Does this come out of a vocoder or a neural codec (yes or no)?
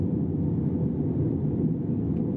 no